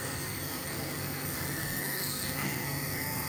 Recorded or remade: remade